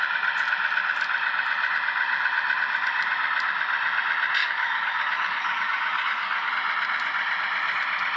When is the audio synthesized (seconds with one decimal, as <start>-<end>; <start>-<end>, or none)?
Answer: 4.4-6.5